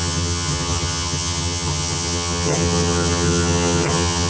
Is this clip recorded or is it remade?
remade